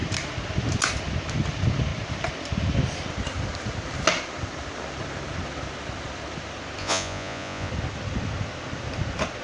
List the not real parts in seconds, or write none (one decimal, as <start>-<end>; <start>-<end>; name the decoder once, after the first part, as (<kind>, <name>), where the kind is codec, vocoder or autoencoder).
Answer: 6.8-7.7 (vocoder, Vocos)